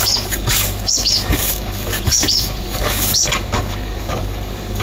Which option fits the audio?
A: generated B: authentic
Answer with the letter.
A